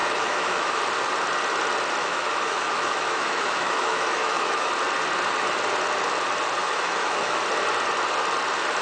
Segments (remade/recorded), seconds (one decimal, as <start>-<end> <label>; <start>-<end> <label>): 0.0-0.8 remade; 0.8-2.0 recorded; 2.0-4.7 remade; 4.7-6.6 recorded; 6.6-7.4 remade; 7.4-8.8 recorded

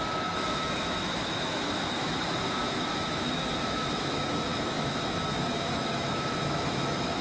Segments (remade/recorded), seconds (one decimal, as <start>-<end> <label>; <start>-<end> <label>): 0.0-7.2 remade

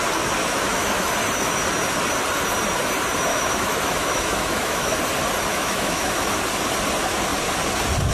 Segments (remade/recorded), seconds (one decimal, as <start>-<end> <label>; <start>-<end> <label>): 0.0-0.4 recorded; 0.4-1.1 remade; 1.1-3.3 recorded; 3.3-5.0 remade; 5.0-5.5 recorded; 5.5-6.4 remade; 6.4-8.1 recorded

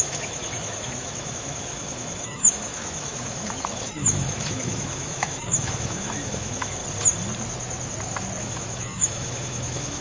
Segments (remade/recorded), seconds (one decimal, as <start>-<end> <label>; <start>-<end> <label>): 0.0-6.8 remade; 6.8-8.4 recorded; 8.4-10.0 remade